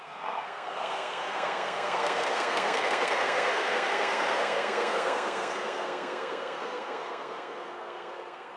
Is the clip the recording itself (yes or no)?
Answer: no